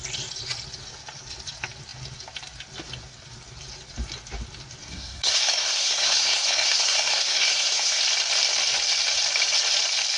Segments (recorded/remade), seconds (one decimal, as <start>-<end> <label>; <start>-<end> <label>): 0.0-4.8 recorded; 4.8-8.0 remade; 8.0-10.2 recorded